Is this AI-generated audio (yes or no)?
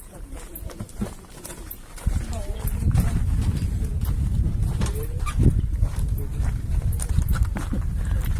yes